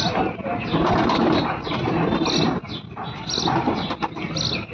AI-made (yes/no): no